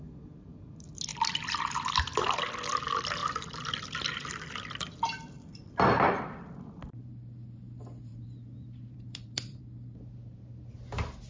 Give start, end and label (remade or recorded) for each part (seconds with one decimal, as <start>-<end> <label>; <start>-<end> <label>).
0.0-1.1 recorded; 1.1-1.6 remade; 1.6-3.2 recorded; 3.2-7.1 remade; 7.1-8.1 recorded; 8.1-9.6 remade; 9.6-11.3 recorded